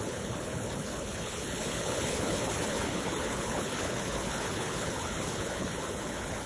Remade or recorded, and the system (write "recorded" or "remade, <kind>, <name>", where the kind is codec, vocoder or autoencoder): remade, codec, HILCodec